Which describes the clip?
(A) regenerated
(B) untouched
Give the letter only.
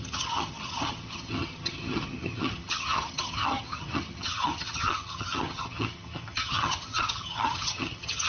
A